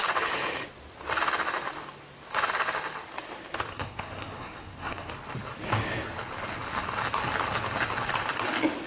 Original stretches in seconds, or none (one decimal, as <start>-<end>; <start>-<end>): 0.0-3.7; 5.1-8.9